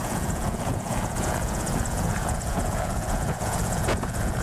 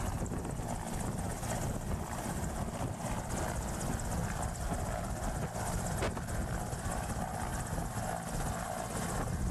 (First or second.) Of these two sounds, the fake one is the first